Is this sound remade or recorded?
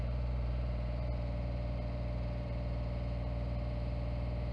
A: remade